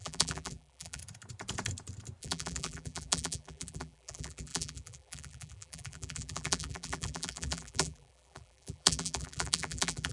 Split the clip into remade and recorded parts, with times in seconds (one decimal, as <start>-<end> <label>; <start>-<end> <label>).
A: 0.0-1.0 remade; 1.0-2.2 recorded; 2.2-10.1 remade